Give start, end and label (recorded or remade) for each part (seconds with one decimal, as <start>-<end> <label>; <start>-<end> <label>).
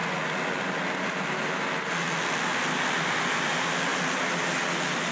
0.0-3.1 recorded; 3.1-3.9 remade; 3.9-4.6 recorded; 4.6-5.1 remade